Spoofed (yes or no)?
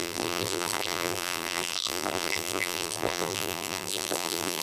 yes